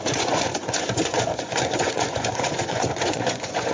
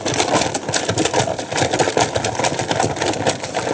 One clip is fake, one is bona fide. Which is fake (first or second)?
first